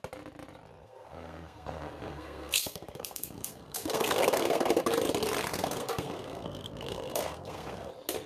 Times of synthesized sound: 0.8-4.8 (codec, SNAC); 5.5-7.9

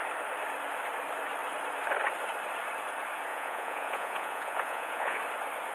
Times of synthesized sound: 3.3-5.2 (vocoder, Vocos)

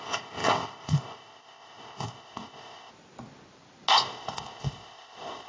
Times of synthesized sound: 0.0-2.9 (codec, ZipCodec); 3.9-5.5

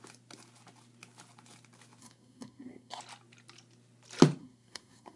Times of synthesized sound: 2.0-3.0 (codec, SNAC); 4.4-5.2

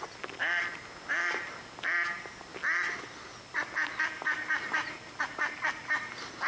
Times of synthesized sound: none

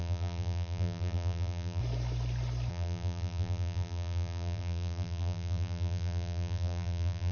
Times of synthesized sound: 0.0-1.8 (vocoder, BigVGAN v2); 2.7-7.3

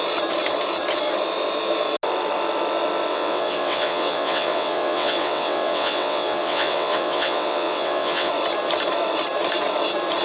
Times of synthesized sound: 3.1-8.3 (vocoder, WaveNeXt)